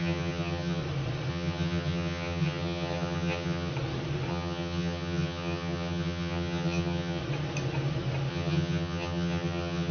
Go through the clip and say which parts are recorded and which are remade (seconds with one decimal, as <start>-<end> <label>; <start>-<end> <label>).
0.0-0.8 remade; 0.8-1.3 recorded; 1.3-3.7 remade; 3.7-4.3 recorded; 4.3-7.2 remade; 7.2-8.3 recorded; 8.3-9.9 remade